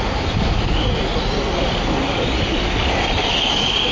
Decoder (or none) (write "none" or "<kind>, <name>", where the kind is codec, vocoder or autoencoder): none